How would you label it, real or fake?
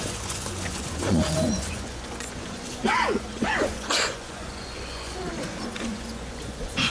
fake